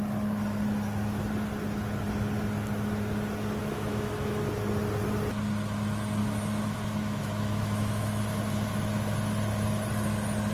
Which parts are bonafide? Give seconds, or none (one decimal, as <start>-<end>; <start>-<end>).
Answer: 0.0-3.6; 4.4-6.2; 8.2-10.5